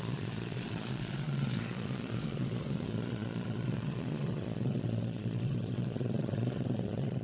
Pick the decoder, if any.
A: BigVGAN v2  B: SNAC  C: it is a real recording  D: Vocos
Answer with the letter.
D